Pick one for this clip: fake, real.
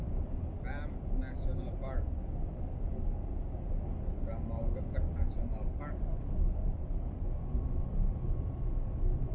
real